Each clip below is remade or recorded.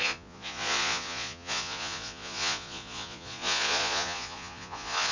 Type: remade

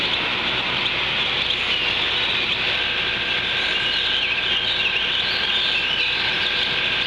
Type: recorded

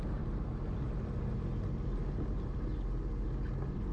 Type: recorded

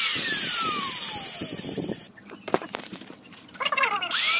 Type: remade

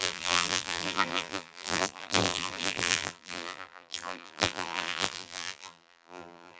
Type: remade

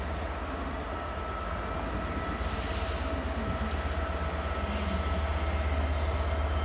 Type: recorded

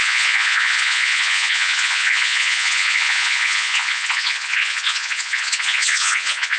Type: remade